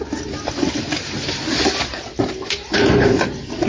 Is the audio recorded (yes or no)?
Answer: yes